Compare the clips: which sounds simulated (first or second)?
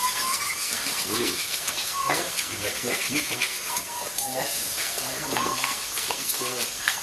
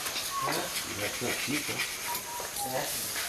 first